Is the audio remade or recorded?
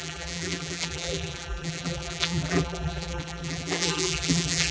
remade